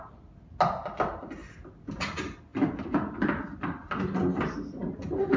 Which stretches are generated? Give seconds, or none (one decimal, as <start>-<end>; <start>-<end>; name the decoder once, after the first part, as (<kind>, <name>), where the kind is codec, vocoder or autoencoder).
none